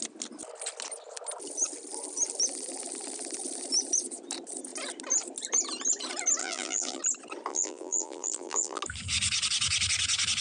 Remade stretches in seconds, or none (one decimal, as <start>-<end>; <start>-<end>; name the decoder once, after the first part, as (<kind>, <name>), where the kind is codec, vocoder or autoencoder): 6.4-7.0 (vocoder, BigVGAN v2); 7.5-8.8

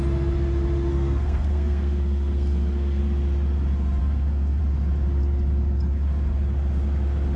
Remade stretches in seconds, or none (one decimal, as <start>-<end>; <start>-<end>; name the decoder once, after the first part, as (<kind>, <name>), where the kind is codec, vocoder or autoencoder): 0.9-3.0 (codec, SNAC); 4.0-4.6

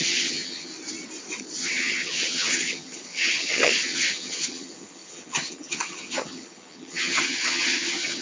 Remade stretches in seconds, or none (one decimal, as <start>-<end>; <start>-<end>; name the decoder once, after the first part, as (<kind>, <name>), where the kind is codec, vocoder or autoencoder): 0.0-0.7 (vocoder, HiFi-GAN); 1.4-8.2

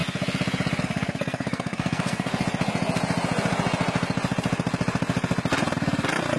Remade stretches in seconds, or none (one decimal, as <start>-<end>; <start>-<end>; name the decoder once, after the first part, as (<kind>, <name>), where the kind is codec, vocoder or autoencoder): 0.8-2.3 (codec, SNAC)

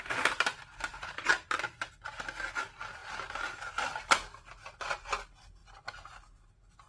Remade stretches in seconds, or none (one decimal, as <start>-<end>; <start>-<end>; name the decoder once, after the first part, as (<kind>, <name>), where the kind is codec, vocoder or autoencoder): none

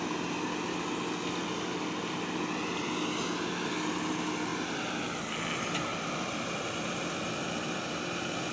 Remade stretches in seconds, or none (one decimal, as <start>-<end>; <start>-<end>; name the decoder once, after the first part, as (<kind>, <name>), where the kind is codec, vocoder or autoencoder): 5.9-7.3 (vocoder, BigVGAN v2)

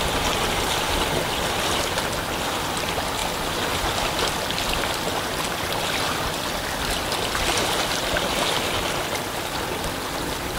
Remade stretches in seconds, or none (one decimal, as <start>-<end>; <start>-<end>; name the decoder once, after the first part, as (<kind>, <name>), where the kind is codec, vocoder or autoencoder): none

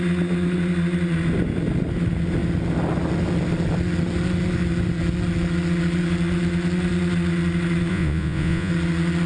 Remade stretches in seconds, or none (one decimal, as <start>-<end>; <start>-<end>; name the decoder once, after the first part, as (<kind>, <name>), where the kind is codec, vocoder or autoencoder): 7.9-8.7 (vocoder, Vocos)